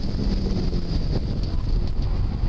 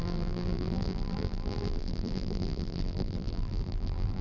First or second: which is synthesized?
second